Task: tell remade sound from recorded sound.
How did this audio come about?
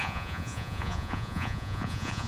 remade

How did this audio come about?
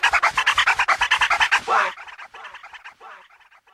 recorded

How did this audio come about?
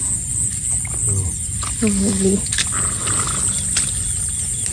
recorded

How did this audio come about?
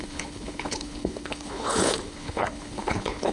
remade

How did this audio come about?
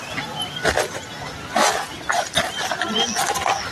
recorded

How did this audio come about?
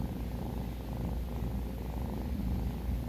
recorded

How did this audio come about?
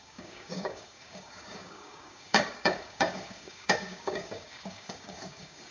remade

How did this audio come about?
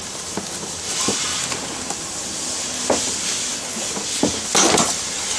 recorded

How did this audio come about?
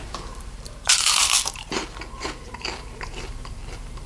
remade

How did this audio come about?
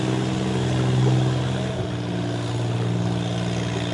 recorded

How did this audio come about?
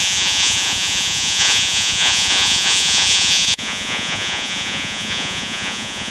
remade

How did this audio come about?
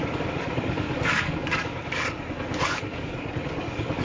remade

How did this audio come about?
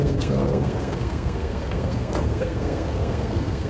remade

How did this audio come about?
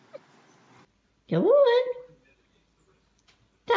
recorded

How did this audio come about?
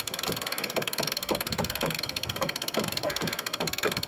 remade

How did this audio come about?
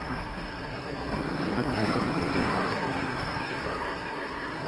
remade